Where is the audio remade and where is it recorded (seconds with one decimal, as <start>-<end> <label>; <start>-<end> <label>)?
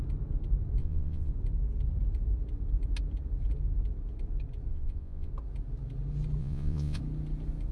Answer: 0.0-0.8 recorded; 0.8-1.3 remade; 1.3-4.7 recorded; 4.7-5.3 remade; 5.3-6.4 recorded; 6.4-7.0 remade; 7.0-7.7 recorded